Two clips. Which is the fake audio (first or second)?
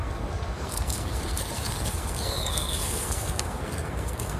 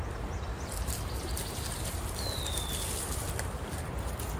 first